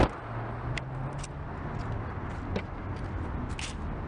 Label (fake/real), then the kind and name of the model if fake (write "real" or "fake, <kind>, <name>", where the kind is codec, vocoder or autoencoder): real